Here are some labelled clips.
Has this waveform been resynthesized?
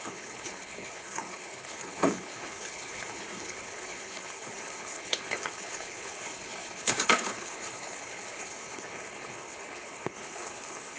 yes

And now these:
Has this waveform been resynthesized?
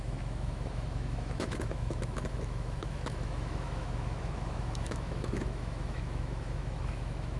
yes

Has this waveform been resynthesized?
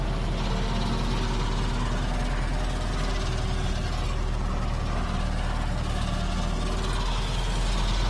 no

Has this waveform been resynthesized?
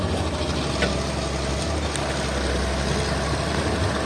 no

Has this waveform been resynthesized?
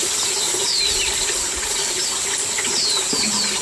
no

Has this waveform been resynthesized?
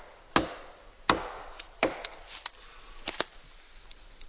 no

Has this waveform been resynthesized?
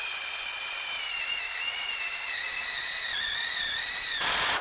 yes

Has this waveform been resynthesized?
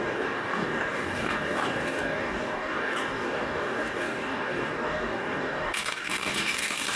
yes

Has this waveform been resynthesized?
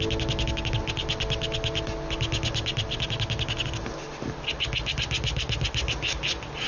no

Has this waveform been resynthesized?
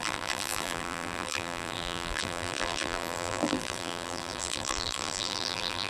yes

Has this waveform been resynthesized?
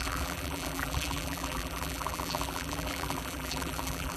yes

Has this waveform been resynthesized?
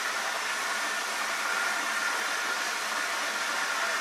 no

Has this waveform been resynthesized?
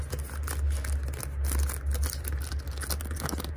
no